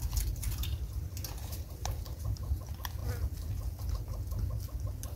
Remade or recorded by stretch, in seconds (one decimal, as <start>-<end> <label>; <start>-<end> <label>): 0.0-5.2 recorded